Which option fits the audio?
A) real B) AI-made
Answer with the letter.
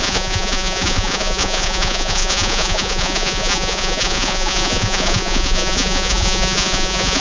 B